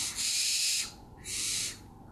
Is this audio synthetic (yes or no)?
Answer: no